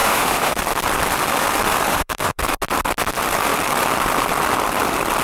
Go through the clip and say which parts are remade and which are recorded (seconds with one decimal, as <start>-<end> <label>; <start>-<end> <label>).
0.0-0.6 remade; 0.6-1.9 recorded; 1.9-2.4 remade; 2.4-5.2 recorded